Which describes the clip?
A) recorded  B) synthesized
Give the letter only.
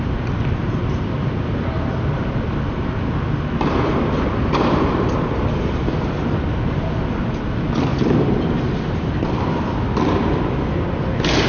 A